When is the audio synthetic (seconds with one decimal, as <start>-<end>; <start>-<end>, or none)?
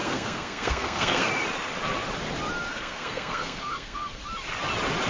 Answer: 0.0-1.3; 2.7-4.2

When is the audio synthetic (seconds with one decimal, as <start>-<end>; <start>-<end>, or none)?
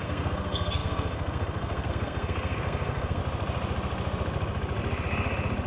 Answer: 0.0-3.2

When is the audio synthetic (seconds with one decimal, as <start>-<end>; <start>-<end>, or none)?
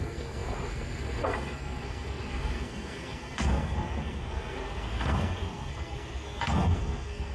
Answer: 0.0-7.3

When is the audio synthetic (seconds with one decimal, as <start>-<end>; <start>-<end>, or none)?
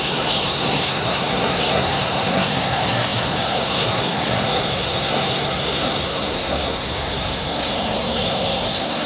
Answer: 0.0-9.1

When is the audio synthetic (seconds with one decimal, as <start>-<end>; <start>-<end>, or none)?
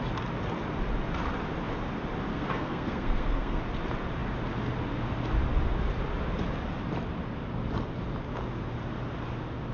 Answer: 2.3-3.6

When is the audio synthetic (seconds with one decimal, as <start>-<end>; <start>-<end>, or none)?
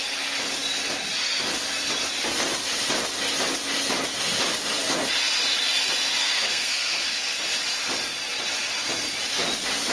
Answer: 6.2-7.0